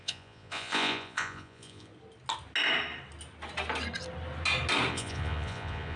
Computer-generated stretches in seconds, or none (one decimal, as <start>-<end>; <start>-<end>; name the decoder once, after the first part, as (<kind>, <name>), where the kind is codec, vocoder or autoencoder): 0.0-1.9 (vocoder, Vocos); 4.9-6.0